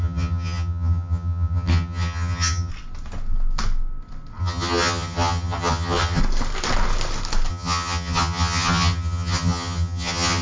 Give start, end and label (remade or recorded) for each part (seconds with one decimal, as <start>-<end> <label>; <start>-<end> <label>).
0.0-2.7 remade; 2.7-4.4 recorded; 4.4-6.2 remade; 6.2-7.5 recorded; 7.5-10.4 remade